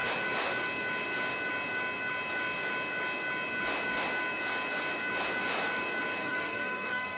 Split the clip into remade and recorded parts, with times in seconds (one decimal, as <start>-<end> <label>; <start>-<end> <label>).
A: 0.0-6.2 recorded; 6.2-7.2 remade